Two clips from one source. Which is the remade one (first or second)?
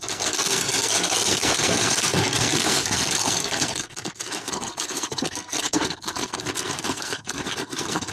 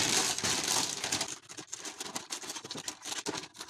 first